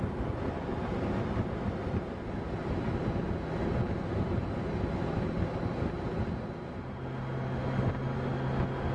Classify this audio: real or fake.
real